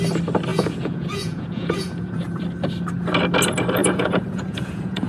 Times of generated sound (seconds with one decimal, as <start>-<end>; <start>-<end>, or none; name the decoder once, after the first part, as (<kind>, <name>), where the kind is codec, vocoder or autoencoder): 0.5-2.4 (vocoder, Vocos); 3.8-5.1